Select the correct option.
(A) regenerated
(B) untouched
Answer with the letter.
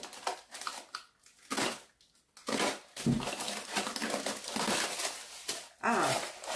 B